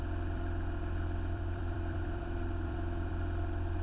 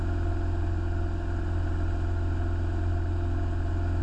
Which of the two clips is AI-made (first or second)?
first